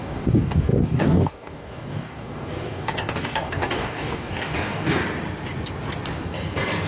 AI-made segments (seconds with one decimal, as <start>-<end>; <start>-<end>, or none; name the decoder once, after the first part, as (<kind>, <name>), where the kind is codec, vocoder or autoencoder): 0.0-5.0 (codec, DAC)